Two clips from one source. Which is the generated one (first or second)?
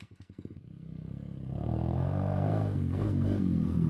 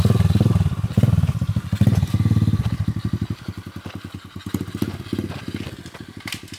first